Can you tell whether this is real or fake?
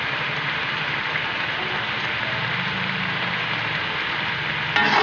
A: real